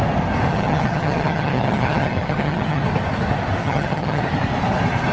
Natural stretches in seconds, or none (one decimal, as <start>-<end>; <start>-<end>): 0.0-0.5; 2.8-3.6; 4.2-5.1